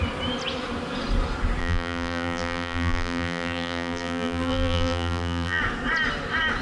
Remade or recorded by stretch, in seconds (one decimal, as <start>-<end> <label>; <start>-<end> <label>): 0.0-1.6 recorded; 1.6-5.6 remade; 5.6-6.6 recorded